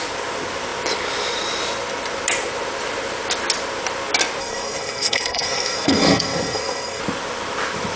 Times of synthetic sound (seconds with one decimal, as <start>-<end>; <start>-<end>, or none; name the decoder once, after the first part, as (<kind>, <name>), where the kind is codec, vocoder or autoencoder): 4.4-7.0 (codec, SNAC)